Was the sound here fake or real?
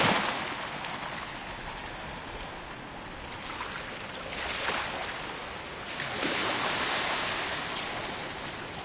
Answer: real